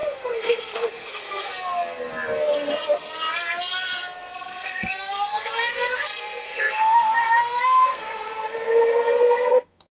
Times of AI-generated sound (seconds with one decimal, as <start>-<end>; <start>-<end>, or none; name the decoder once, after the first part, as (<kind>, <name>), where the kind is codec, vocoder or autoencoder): 0.0-1.5 (codec, SNAC); 4.3-8.3; 9.5-9.9